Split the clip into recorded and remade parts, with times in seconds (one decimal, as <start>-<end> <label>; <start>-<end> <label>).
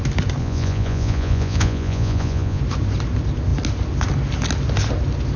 0.0-0.4 recorded; 0.4-2.6 remade; 2.6-5.4 recorded